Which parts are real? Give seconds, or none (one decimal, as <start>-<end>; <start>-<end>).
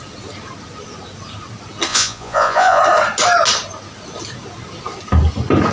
0.0-1.9; 2.8-5.7